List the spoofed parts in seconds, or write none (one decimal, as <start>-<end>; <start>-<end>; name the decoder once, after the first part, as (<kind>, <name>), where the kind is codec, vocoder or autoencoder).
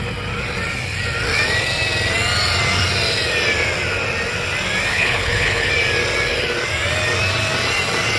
4.9-5.7 (codec, HILCodec)